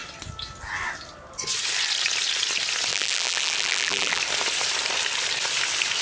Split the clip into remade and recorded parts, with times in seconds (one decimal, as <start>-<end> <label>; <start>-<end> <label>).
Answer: 0.0-2.9 recorded; 2.9-4.2 remade; 4.2-6.0 recorded